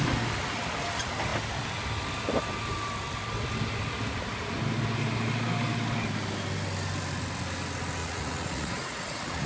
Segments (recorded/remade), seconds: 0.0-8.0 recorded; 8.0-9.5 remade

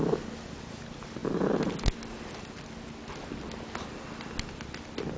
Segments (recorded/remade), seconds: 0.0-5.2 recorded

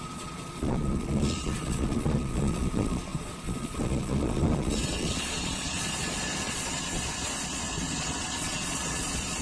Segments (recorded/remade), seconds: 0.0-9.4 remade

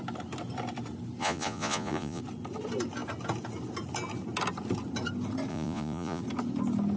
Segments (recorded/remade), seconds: 0.0-1.2 recorded; 1.2-2.2 remade; 2.2-5.5 recorded; 5.5-6.2 remade; 6.2-7.0 recorded

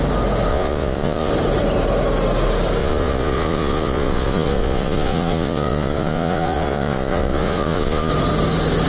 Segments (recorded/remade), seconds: 0.0-0.5 recorded; 0.5-1.3 remade; 1.3-2.8 recorded; 2.8-8.1 remade; 8.1-8.9 recorded

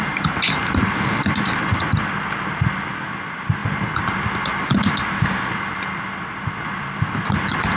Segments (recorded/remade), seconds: 0.0-7.8 recorded